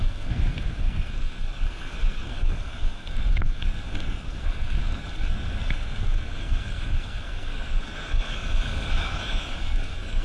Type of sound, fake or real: fake